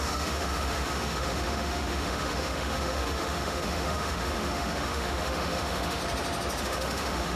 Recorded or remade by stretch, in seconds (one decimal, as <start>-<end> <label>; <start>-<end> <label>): 0.0-6.0 remade; 6.0-6.6 recorded; 6.6-7.4 remade